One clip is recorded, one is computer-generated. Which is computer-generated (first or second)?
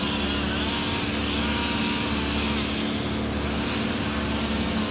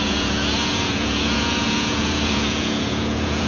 second